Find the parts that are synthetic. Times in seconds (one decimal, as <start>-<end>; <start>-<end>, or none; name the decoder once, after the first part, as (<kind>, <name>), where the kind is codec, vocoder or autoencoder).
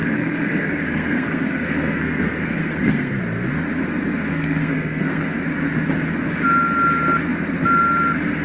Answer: 0.0-3.2 (codec, SNAC); 4.3-5.4